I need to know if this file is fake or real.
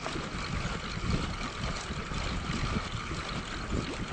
real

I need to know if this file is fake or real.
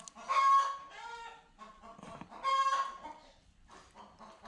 real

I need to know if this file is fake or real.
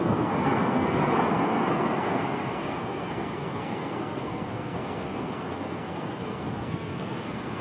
fake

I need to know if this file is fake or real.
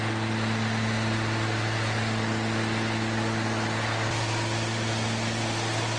real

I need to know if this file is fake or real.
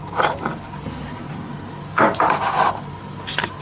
real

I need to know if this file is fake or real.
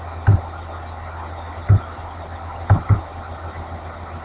real